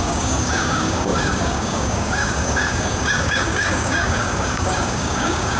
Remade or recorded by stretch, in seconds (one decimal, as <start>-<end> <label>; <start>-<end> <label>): 0.0-5.6 remade